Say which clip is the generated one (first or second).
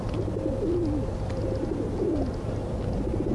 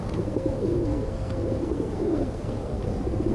second